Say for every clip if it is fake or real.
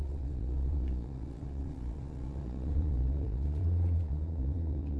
fake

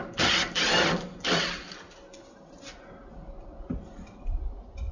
real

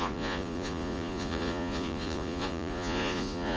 fake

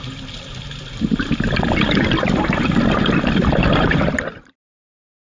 real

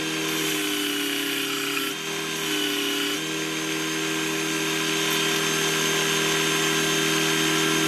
real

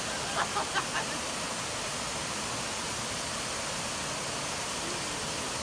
real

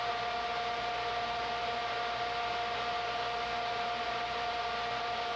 real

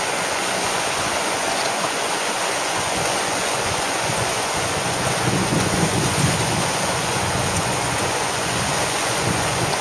fake